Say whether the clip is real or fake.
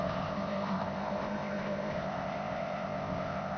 fake